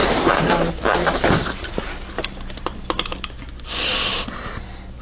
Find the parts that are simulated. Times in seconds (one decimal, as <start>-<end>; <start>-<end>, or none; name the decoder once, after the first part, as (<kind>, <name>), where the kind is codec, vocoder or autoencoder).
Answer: 0.0-0.7 (vocoder, BigVGAN v2); 3.9-4.5